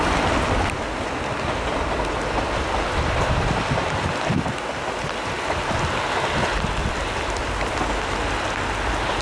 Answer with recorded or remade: recorded